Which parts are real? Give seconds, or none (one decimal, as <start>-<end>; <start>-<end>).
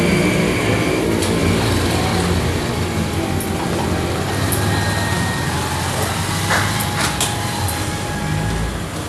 0.0-9.1